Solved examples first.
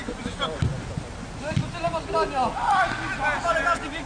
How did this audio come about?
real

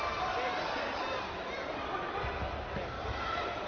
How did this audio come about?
real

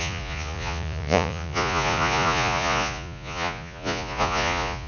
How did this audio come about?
fake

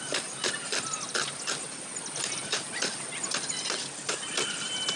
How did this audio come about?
real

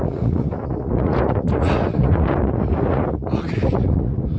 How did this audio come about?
fake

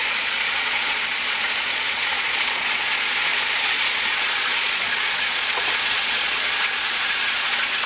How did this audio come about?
fake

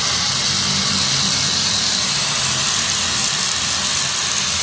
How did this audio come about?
real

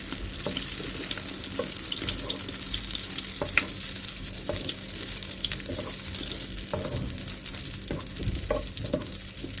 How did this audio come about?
real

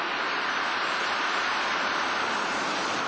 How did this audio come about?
real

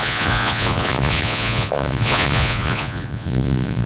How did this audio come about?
fake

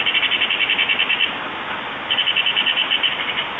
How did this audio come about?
real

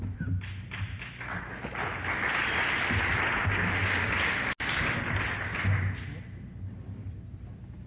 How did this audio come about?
real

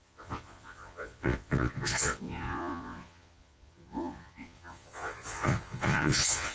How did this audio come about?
fake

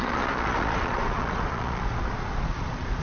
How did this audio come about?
fake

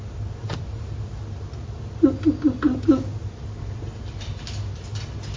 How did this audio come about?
real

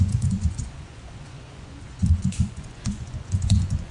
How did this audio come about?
fake